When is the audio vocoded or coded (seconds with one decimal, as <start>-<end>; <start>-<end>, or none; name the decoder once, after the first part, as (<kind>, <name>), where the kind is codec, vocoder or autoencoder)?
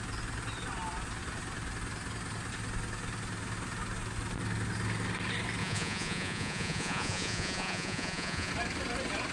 5.6-8.5 (vocoder, Vocos)